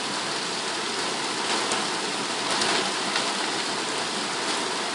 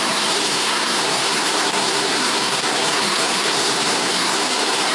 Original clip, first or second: first